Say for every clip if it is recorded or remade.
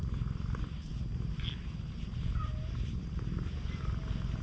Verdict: recorded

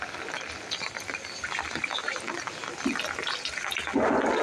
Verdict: recorded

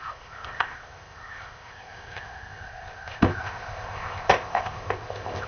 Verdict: remade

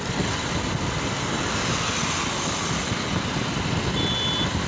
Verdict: recorded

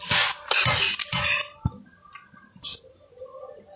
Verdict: recorded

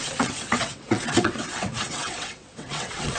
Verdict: remade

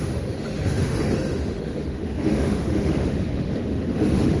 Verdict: remade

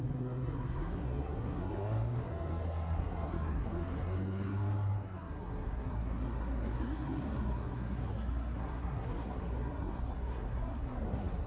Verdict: remade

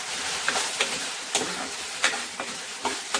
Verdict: recorded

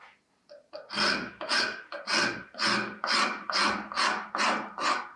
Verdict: recorded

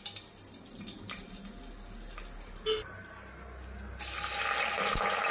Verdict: recorded